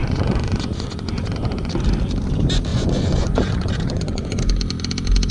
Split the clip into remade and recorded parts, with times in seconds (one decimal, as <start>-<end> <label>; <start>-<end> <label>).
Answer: 0.0-1.7 remade; 1.7-2.7 recorded; 2.7-4.4 remade; 4.4-5.3 recorded